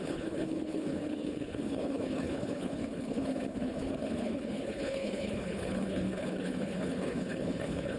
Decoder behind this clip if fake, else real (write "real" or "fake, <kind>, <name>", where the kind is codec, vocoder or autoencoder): fake, codec, HILCodec